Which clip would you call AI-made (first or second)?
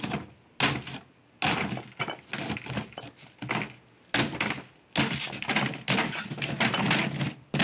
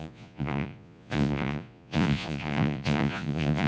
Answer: second